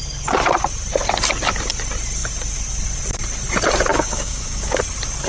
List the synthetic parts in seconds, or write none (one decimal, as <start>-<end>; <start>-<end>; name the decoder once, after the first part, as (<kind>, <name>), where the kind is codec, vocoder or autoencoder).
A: 3.9-4.8 (codec, DAC)